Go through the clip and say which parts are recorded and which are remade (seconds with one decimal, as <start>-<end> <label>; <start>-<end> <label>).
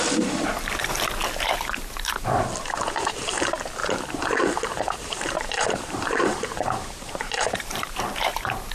0.0-3.8 recorded; 3.8-8.7 remade